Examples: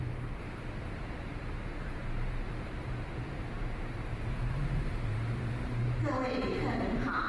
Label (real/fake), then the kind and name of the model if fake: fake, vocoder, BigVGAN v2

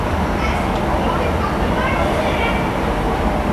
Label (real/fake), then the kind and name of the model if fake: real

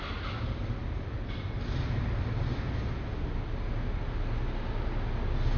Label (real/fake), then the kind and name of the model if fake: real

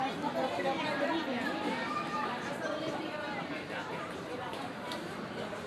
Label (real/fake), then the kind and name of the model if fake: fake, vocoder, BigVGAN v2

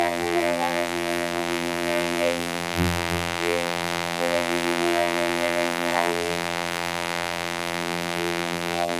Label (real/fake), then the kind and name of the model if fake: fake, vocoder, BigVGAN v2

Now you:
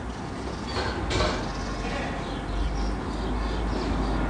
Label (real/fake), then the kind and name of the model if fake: real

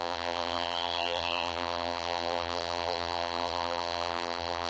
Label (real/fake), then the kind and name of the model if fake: fake, vocoder, BigVGAN v2